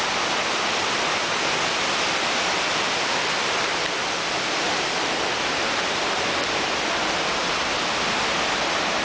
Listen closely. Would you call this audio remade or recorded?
recorded